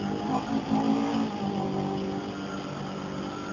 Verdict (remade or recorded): recorded